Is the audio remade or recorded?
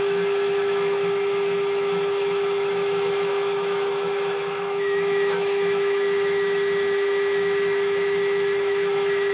remade